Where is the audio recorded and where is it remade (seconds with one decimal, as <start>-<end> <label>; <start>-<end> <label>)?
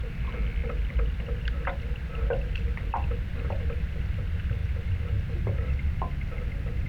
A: 0.0-6.9 recorded